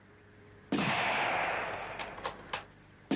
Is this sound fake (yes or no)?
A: no